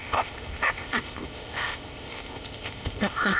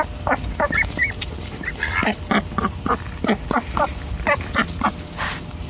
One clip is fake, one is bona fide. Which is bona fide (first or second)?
second